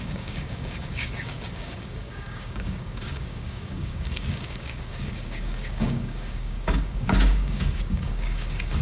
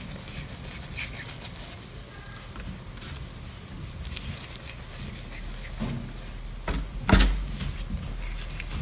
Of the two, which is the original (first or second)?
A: second